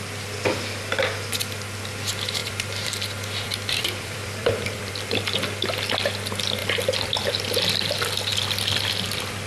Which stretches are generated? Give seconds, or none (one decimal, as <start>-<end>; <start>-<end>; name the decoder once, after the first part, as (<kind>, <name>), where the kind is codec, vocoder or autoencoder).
2.4-4.9 (vocoder, BigVGAN v2)